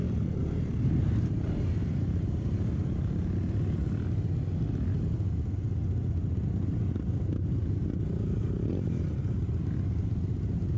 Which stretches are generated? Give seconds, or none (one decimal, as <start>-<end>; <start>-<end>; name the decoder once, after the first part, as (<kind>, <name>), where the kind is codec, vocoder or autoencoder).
0.4-2.4 (vocoder, BigVGAN v2)